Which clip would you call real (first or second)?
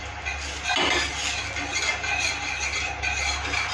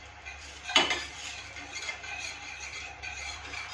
first